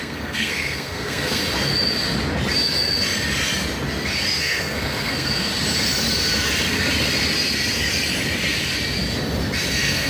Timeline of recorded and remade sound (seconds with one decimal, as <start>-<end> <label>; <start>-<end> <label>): 0.0-1.4 remade; 1.4-4.4 recorded; 4.4-5.5 remade; 5.5-9.7 recorded; 9.7-10.1 remade